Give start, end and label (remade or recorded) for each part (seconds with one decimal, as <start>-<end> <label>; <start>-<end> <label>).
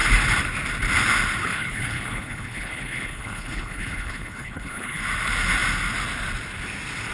0.0-1.4 recorded; 1.4-5.0 remade; 5.0-7.1 recorded